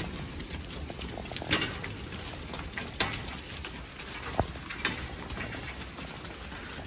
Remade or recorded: recorded